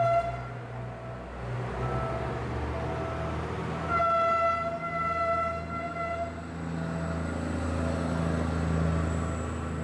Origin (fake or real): real